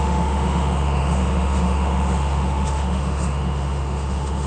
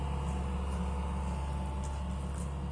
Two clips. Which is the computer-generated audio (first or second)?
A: first